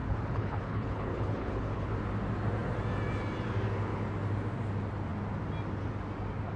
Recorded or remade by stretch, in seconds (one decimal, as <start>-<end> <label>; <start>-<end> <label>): 0.0-1.9 remade; 1.9-6.6 recorded